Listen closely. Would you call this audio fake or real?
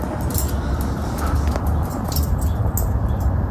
real